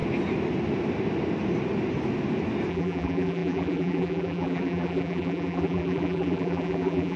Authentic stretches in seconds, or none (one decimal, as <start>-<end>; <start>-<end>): 0.0-2.7